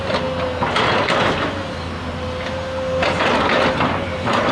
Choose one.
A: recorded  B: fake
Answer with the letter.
A